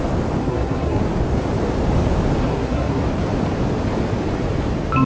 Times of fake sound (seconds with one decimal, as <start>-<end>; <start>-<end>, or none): 0.4-1.0; 2.4-3.0